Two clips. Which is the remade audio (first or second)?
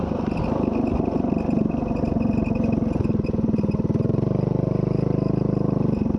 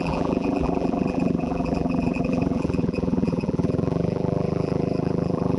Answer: second